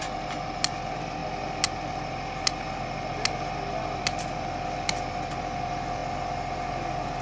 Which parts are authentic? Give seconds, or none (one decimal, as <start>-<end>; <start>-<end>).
0.0-7.2